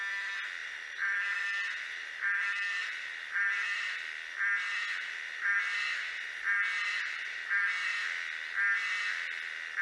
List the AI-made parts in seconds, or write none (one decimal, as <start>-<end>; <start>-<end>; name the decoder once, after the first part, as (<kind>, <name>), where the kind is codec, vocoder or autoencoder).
0.6-4.0 (vocoder, BigVGAN v2); 5.0-7.9